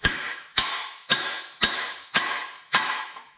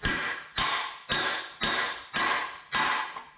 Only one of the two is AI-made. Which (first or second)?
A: first